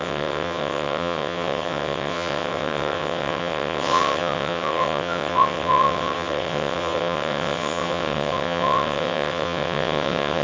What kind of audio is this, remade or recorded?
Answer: remade